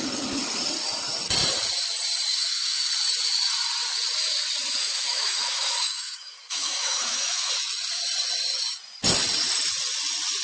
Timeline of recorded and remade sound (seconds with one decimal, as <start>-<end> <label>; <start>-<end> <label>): 0.0-2.3 recorded; 2.3-2.9 remade; 2.9-4.8 recorded; 4.8-7.5 remade; 7.5-10.4 recorded